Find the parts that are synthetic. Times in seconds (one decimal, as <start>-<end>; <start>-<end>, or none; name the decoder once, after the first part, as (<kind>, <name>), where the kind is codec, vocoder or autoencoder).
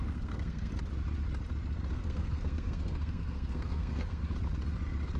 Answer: 0.0-0.7 (codec, SNAC); 1.9-4.2